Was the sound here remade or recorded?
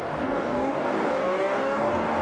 remade